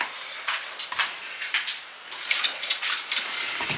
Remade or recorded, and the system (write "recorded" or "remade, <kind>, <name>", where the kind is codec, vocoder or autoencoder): recorded